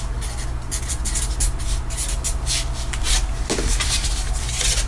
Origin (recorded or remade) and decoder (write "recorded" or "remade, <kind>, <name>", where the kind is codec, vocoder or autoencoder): recorded